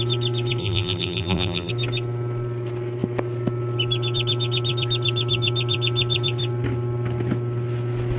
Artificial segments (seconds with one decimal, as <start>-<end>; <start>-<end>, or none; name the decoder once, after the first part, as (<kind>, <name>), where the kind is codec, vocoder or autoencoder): 0.6-1.7 (vocoder, BigVGAN v2)